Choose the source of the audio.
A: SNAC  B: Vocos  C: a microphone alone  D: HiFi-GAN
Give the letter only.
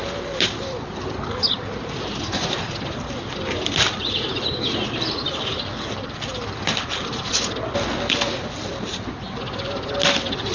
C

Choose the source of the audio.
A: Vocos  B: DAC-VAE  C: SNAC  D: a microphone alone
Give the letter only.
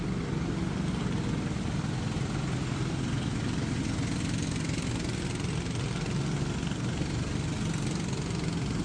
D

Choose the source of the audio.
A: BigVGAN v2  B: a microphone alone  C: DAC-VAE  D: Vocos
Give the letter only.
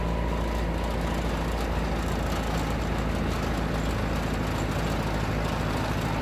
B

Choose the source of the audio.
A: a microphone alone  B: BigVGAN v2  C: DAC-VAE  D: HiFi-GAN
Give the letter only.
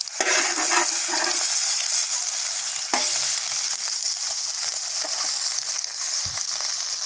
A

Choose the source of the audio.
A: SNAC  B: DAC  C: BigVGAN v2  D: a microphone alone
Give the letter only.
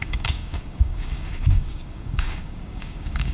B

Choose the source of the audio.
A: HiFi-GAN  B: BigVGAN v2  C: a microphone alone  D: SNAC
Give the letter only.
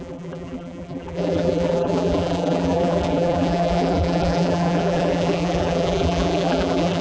B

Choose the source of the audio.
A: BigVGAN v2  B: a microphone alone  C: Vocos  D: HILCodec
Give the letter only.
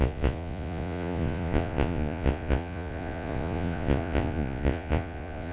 C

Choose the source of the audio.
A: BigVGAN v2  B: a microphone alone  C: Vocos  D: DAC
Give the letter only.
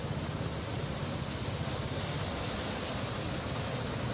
B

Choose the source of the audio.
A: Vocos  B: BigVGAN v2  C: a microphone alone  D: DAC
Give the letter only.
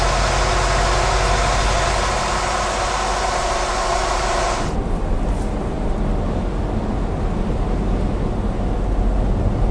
C